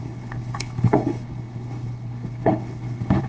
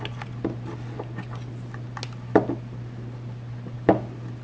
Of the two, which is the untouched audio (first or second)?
second